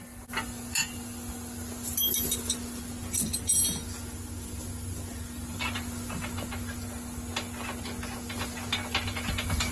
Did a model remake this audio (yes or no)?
no